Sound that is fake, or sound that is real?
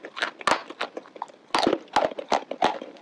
real